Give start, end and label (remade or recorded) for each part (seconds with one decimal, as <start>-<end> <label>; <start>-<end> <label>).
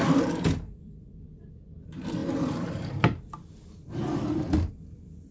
0.0-5.3 recorded